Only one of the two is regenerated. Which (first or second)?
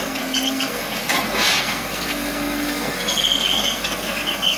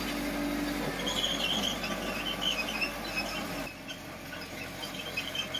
first